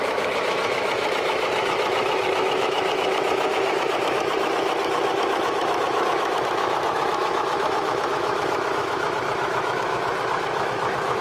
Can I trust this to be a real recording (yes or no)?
no